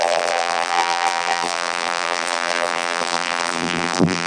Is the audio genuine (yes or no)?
no